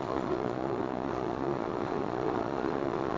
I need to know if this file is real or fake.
fake